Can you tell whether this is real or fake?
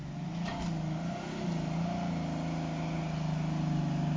real